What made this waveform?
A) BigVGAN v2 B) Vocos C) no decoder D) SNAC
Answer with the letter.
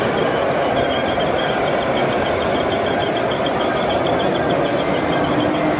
C